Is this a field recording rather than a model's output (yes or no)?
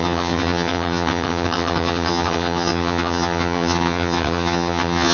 no